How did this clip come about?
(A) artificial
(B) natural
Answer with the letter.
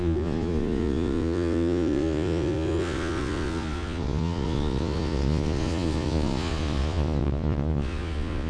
A